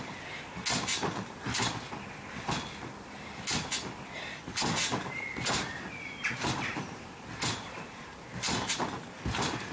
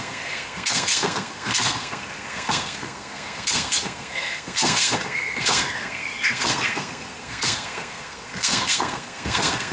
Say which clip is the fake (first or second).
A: second